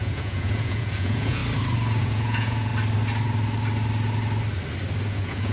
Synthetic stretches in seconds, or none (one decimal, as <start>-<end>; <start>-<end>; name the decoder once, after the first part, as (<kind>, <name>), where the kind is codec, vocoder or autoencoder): 0.0-1.4 (vocoder, Vocos); 2.0-2.7; 5.1-5.5